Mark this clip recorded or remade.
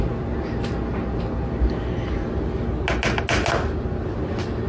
recorded